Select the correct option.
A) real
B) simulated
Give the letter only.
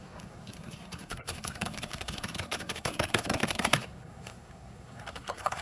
B